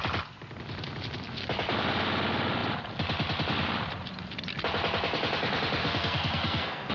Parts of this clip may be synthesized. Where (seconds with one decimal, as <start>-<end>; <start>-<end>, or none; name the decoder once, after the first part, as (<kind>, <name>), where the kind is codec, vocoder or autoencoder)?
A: 5.8-6.9 (codec, SNAC)